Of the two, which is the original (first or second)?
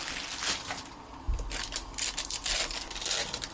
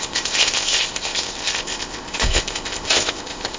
first